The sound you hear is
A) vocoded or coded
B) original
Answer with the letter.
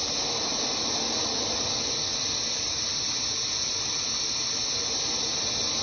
B